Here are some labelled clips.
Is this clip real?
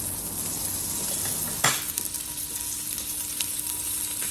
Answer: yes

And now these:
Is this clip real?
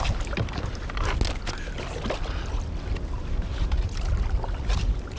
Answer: yes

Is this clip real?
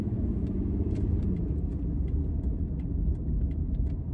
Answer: yes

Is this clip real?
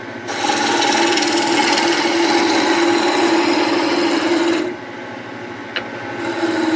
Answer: yes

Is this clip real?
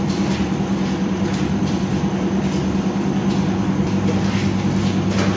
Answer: yes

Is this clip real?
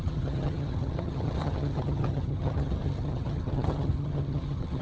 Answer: no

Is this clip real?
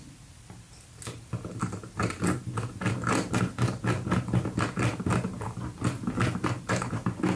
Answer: yes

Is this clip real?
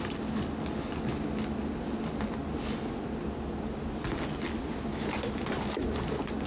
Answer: yes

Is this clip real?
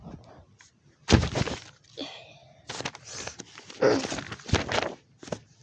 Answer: yes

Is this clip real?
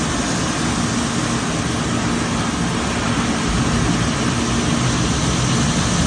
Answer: yes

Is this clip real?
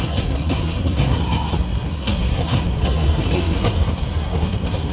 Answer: no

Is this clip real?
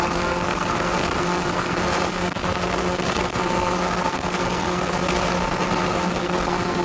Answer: no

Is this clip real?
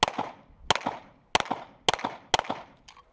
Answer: yes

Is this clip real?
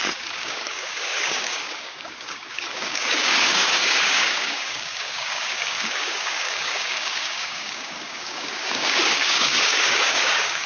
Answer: no